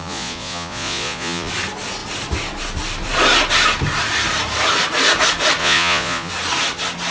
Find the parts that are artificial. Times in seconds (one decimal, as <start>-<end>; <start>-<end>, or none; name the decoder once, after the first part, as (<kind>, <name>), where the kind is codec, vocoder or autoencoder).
0.0-1.5 (vocoder, Vocos); 5.6-6.3